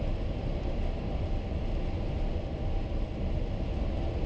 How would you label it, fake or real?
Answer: real